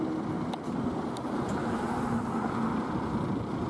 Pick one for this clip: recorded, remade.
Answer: recorded